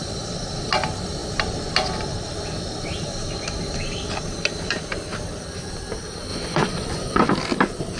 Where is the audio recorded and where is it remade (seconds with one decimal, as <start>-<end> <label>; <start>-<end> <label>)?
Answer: 0.0-6.3 recorded; 6.3-7.2 remade; 7.2-8.0 recorded